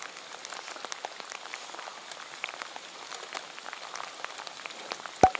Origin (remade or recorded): remade